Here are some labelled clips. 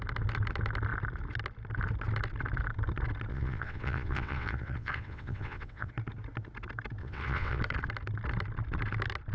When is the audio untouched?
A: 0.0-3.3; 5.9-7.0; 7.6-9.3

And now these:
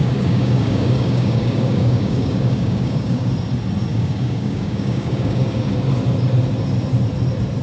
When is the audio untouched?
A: 3.3-3.9; 5.7-7.6

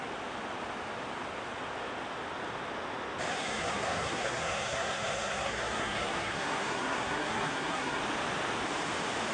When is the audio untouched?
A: 0.0-3.3; 8.0-9.3